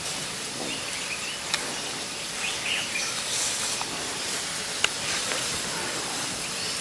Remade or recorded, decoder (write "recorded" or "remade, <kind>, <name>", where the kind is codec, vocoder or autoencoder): remade, vocoder, BigVGAN v2